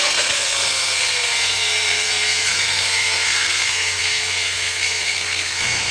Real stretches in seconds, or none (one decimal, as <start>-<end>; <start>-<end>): none